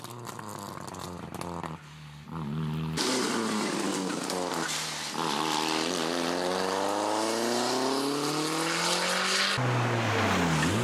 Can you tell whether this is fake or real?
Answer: real